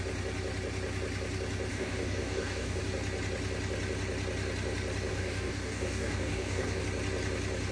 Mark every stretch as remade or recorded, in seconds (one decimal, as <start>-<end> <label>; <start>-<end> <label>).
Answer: 0.0-1.7 recorded; 1.7-2.8 remade; 2.8-5.1 recorded; 5.1-6.8 remade; 6.8-7.7 recorded